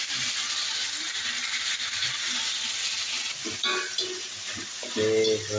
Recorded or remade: recorded